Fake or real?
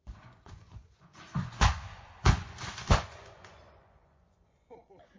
fake